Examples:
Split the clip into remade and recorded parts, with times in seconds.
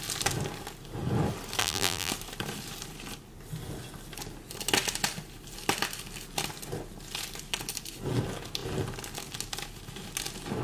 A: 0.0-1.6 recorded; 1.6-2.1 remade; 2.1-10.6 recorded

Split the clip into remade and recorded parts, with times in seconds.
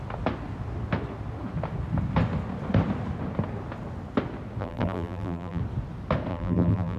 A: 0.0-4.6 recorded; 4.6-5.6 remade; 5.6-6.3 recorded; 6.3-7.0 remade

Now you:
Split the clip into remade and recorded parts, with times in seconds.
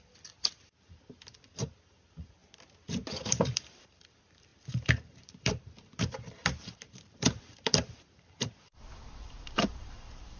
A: 0.0-2.4 remade; 2.4-3.3 recorded; 3.3-10.4 remade